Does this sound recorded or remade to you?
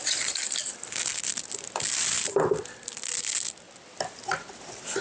recorded